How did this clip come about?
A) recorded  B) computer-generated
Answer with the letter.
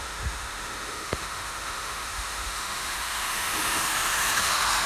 B